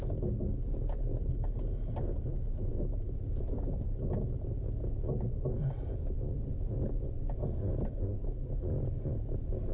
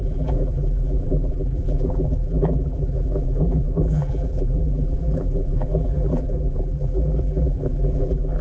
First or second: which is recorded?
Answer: first